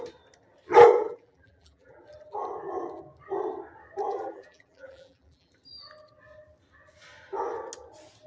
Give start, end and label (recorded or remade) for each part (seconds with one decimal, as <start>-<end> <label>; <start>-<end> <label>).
0.0-1.0 recorded; 1.0-2.0 remade; 2.0-4.1 recorded; 4.1-5.5 remade; 5.5-8.3 recorded

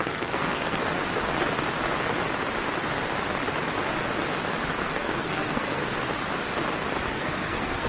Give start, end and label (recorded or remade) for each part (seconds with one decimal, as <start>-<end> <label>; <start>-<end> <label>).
0.0-0.8 remade; 0.8-4.8 recorded; 4.8-5.8 remade; 5.8-7.1 recorded; 7.1-7.9 remade

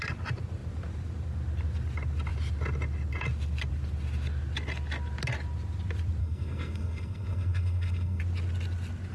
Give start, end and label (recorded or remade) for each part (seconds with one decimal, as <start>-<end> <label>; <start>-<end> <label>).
0.0-6.2 recorded; 6.2-8.2 remade; 8.2-9.1 recorded

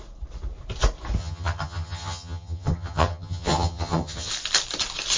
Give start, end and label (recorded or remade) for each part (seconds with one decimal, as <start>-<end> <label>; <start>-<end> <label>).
0.0-1.2 recorded; 1.2-4.3 remade; 4.3-5.2 recorded

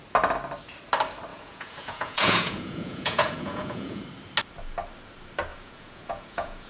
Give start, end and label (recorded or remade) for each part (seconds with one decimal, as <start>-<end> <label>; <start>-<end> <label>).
0.0-1.3 recorded; 1.3-4.0 remade; 4.0-5.5 recorded; 5.5-6.7 remade

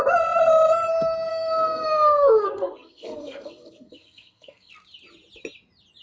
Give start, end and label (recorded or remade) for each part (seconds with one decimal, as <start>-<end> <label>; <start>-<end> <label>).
0.0-1.3 recorded; 1.3-4.7 remade; 4.7-6.0 recorded

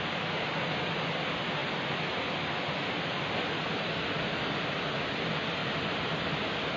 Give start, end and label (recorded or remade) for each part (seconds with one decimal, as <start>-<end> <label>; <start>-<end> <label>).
0.0-6.8 recorded

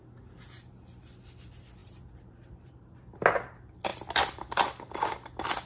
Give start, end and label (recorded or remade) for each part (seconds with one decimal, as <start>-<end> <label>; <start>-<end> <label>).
0.0-1.8 recorded; 1.8-3.2 remade; 3.2-3.9 recorded; 3.9-4.5 remade; 4.5-5.7 recorded